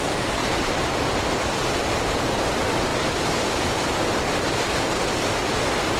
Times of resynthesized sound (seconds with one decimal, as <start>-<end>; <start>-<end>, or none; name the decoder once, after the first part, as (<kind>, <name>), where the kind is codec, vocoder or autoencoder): 0.4-2.0 (vocoder, BigVGAN v2); 2.9-4.6